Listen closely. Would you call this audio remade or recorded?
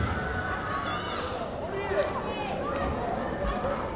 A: recorded